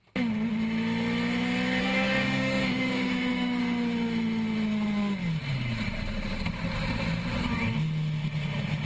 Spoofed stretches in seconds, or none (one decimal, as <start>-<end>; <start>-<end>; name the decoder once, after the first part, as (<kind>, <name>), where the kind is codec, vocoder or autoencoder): 1.8-3.6 (autoencoder, DAC-VAE)